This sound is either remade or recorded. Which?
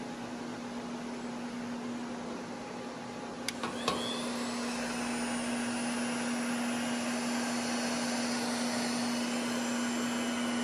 recorded